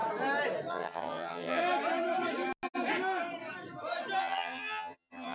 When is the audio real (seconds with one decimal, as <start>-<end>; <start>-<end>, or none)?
0.0-0.7; 1.6-4.2